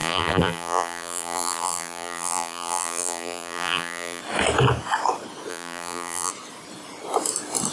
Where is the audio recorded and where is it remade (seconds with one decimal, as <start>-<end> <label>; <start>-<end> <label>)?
0.0-4.2 remade; 4.2-5.5 recorded; 5.5-6.3 remade; 6.3-7.7 recorded